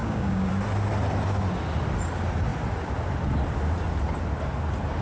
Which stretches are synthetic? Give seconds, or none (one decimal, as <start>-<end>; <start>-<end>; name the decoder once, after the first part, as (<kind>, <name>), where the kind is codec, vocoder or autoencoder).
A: 0.0-0.5 (codec, DAC)